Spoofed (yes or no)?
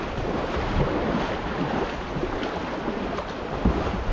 no